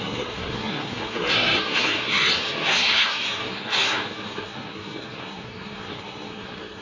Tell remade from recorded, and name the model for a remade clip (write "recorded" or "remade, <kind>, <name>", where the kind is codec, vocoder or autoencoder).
remade, codec, SNAC